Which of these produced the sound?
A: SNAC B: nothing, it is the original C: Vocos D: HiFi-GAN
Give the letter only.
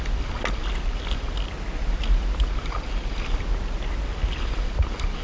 B